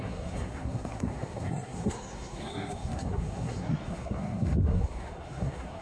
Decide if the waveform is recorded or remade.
remade